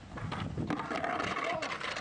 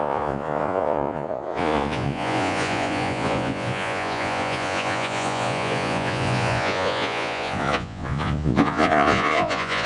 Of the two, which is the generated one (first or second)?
second